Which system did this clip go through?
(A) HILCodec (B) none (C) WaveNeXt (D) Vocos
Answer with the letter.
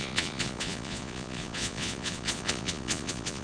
D